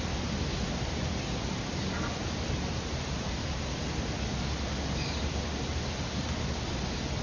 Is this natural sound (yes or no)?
yes